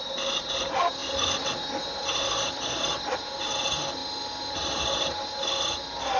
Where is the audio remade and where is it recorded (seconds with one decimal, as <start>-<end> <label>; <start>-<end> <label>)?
0.0-6.2 recorded